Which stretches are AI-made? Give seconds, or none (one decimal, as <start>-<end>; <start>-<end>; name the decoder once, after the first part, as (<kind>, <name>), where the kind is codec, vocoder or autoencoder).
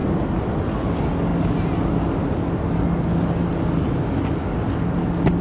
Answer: none